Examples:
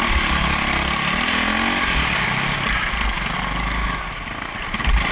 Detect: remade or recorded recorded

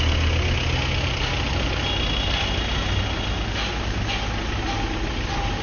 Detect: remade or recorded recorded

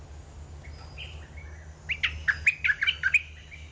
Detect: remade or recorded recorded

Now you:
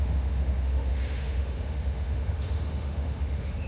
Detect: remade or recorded remade